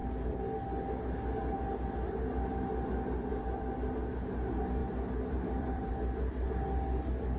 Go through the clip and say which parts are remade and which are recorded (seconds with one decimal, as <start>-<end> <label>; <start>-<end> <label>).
0.0-4.8 recorded; 4.8-5.9 remade; 5.9-7.4 recorded